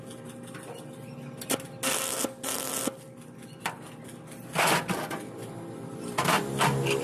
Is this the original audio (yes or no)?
yes